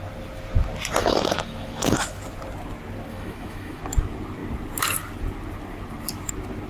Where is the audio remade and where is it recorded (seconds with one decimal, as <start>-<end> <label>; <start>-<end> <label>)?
0.0-1.0 recorded; 1.0-2.2 remade; 2.2-3.1 recorded; 3.1-3.8 remade; 3.8-6.7 recorded